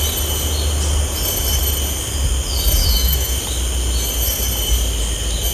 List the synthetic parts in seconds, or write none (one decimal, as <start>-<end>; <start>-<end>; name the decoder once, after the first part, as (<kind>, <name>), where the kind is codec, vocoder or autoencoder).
2.8-3.4 (autoencoder, DAC-VAE)